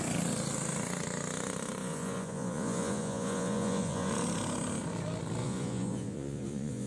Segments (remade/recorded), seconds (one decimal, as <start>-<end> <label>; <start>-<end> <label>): 0.0-1.8 recorded; 1.8-4.1 remade; 4.1-5.4 recorded; 5.4-6.9 remade